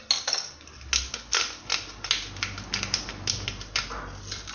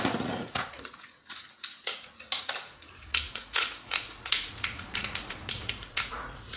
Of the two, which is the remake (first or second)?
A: second